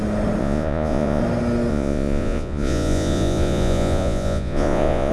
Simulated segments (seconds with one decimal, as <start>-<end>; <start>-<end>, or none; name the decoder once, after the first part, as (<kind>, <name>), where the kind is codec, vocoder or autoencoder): 0.4-1.2 (vocoder, Vocos); 1.7-5.1

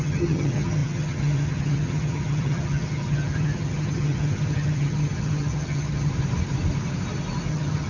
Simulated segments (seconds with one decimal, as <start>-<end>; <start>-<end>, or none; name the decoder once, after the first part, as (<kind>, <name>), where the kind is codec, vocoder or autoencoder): 0.0-6.1 (vocoder, HiFi-GAN); 7.5-7.9

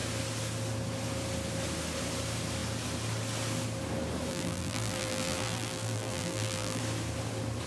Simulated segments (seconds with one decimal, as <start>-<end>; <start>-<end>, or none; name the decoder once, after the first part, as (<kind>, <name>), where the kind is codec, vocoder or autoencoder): 4.3-6.8 (vocoder, BigVGAN v2)

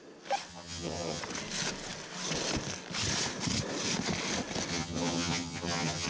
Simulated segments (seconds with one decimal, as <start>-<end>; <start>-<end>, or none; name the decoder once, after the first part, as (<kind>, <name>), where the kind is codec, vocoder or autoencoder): 0.5-1.2 (vocoder, HiFi-GAN); 4.7-6.1

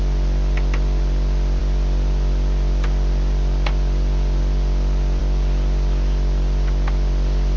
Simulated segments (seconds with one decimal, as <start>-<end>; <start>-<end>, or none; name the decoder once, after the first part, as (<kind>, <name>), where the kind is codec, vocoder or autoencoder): none

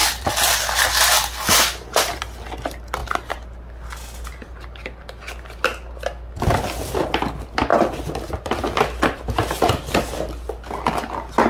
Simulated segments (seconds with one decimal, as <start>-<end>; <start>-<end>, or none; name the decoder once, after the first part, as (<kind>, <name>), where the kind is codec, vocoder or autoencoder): none